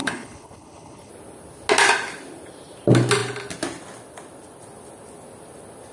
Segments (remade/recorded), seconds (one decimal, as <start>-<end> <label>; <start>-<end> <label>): 0.0-1.1 remade; 1.1-5.9 recorded

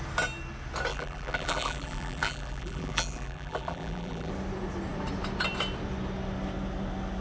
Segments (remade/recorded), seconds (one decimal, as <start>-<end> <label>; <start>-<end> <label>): 0.0-0.9 recorded; 0.9-4.3 remade; 4.3-7.2 recorded

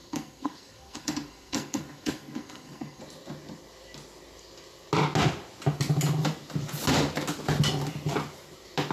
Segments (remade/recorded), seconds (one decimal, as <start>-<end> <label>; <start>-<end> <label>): 0.0-3.0 remade; 3.0-8.9 recorded

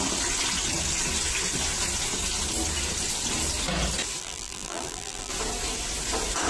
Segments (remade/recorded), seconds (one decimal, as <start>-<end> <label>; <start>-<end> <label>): 0.0-4.2 recorded; 4.2-5.3 remade; 5.3-6.5 recorded

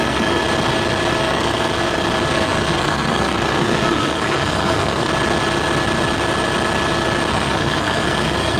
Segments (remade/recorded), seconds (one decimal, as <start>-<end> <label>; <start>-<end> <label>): 0.0-0.4 remade; 0.4-1.2 recorded; 1.2-1.7 remade; 1.7-2.3 recorded; 2.3-5.1 remade; 5.1-7.3 recorded; 7.3-8.6 remade

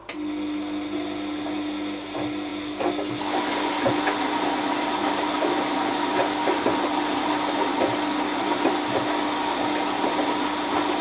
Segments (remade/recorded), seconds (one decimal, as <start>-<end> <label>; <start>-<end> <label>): 0.0-11.0 recorded